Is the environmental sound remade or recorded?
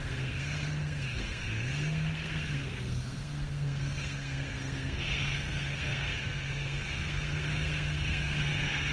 remade